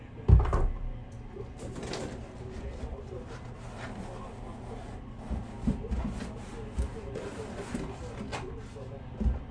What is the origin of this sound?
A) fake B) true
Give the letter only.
B